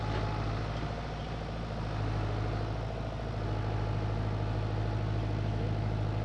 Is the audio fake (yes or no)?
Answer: no